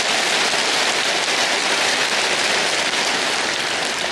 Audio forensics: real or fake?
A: real